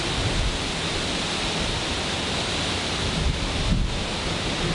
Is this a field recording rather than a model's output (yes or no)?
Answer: yes